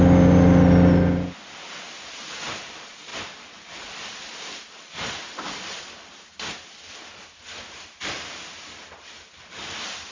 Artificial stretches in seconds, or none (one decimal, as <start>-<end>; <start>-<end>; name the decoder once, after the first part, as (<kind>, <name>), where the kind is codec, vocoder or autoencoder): none